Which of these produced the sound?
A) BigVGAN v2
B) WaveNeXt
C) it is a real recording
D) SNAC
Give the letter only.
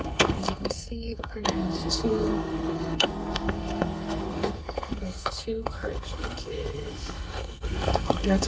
D